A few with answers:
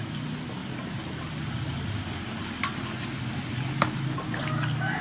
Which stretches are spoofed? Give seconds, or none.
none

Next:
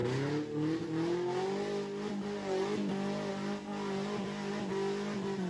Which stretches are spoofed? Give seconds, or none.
none

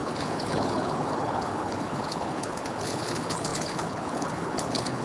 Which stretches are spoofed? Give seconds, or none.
0.0-5.0 (codec, HILCodec)

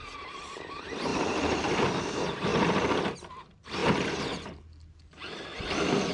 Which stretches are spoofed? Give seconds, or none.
none

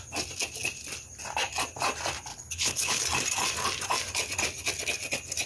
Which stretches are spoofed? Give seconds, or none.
2.3-3.0 (codec, HILCodec)

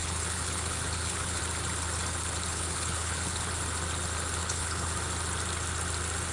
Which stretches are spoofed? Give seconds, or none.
0.0-1.4 (codec, HILCodec); 2.5-3.5; 4.4-4.9

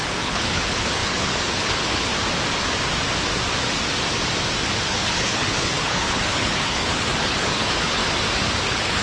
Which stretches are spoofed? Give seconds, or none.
0.0-2.1 (codec, HILCodec); 4.9-8.0; 8.6-9.0

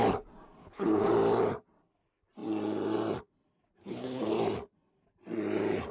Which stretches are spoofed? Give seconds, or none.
0.6-1.1 (codec, HILCodec); 3.8-4.4